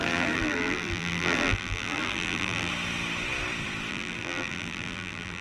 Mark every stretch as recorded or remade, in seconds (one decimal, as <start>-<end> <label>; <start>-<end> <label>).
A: 0.0-2.7 remade; 2.7-3.9 recorded; 3.9-5.4 remade